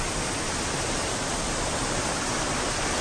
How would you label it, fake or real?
real